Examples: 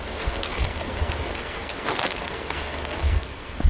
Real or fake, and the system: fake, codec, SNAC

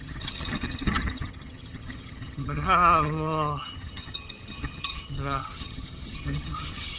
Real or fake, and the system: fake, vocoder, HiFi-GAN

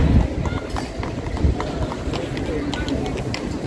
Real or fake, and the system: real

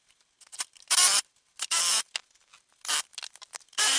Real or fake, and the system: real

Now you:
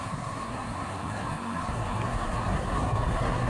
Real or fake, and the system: fake, codec, SNAC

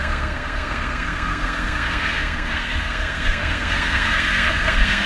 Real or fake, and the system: fake, codec, SNAC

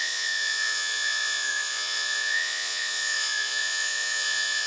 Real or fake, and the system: fake, vocoder, Vocos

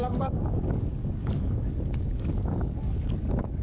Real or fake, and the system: fake, codec, DAC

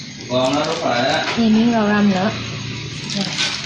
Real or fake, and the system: real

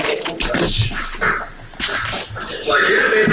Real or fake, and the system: real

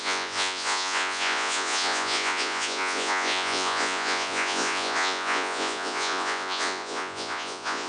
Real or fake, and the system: fake, vocoder, Vocos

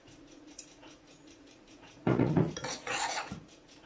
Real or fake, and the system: fake, vocoder, Vocos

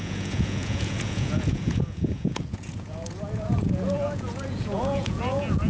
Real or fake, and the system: fake, vocoder, Vocos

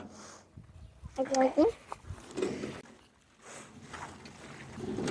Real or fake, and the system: real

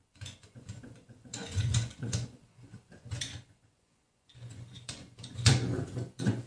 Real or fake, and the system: fake, vocoder, Vocos